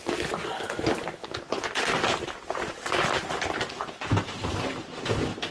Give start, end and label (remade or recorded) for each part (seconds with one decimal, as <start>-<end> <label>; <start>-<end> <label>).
0.0-5.5 recorded